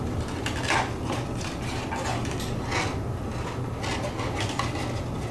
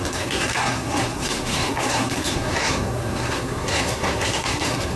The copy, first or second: second